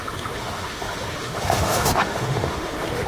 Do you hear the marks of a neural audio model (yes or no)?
yes